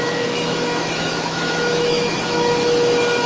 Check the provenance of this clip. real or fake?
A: fake